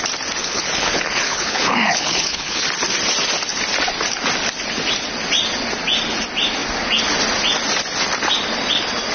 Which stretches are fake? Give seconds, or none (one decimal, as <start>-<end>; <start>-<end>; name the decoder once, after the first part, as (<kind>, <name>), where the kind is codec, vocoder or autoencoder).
0.4-2.6 (codec, HILCodec)